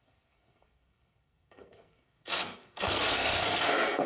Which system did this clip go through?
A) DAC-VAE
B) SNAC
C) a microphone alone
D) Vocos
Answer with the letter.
B